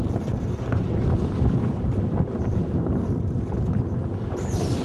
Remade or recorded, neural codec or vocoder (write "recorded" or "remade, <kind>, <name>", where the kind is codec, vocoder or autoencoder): recorded